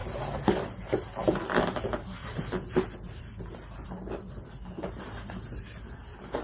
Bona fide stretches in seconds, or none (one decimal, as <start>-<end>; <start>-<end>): 0.0-6.4